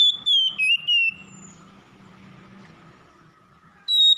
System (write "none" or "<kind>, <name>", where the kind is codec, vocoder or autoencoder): none